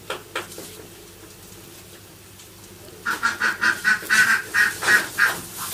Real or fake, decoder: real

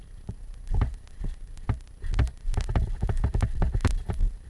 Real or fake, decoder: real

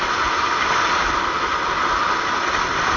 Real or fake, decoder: real